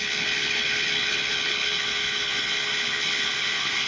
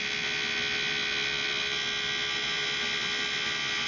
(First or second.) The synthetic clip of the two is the first